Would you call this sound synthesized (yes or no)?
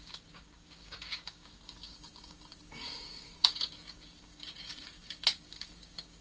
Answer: yes